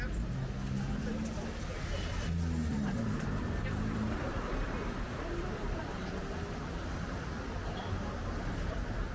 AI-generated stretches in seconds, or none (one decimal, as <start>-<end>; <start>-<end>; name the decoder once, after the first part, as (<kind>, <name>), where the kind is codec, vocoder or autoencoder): 2.6-6.2 (vocoder, BigVGAN v2)